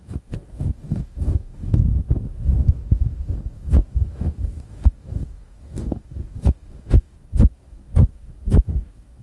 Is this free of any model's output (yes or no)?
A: no